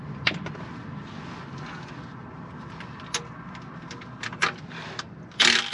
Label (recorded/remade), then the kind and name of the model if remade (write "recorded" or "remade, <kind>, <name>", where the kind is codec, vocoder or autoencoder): recorded